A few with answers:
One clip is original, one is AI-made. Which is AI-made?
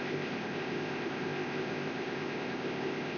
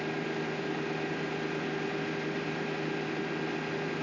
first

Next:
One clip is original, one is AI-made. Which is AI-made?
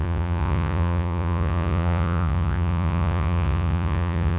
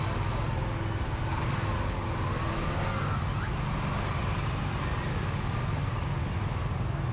first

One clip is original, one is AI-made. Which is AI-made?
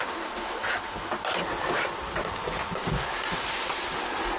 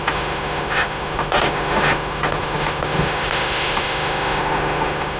second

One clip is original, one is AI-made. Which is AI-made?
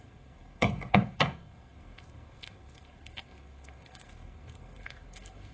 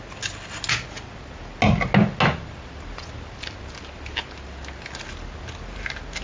first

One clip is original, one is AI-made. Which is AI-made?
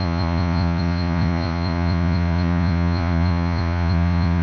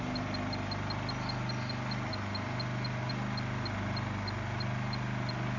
first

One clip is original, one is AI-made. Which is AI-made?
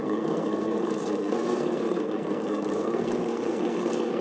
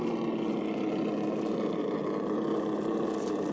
first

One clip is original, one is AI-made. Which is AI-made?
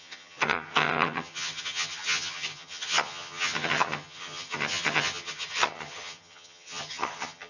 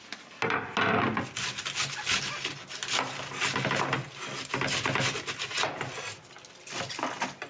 first